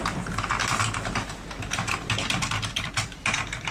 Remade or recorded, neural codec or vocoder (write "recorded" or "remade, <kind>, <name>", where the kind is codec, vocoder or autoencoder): recorded